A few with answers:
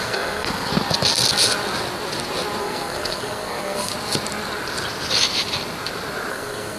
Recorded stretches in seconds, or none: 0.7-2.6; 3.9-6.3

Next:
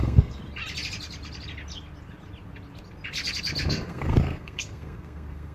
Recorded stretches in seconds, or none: 0.4-3.7

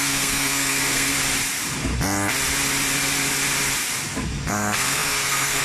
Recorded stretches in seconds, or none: 1.1-4.5